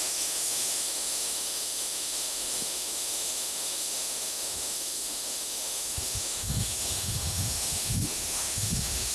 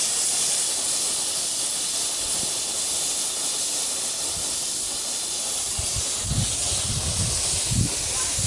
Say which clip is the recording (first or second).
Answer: second